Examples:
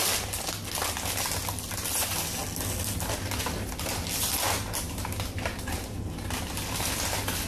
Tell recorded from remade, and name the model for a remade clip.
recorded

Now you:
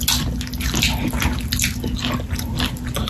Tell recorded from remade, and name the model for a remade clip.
recorded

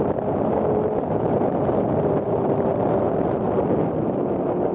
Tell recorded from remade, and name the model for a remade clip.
recorded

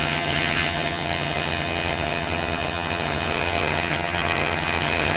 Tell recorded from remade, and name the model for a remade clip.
remade, vocoder, HiFi-GAN